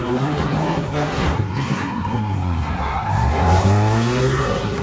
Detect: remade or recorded remade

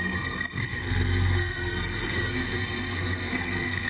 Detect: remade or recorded remade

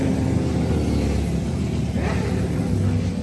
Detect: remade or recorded recorded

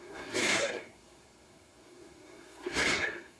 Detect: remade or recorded remade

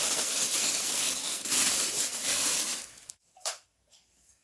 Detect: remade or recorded remade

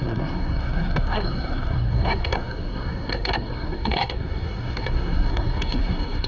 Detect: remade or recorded remade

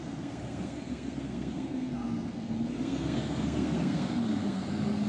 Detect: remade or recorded remade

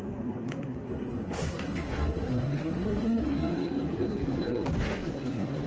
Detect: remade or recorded remade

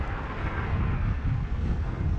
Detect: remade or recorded remade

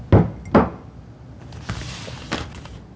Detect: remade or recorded recorded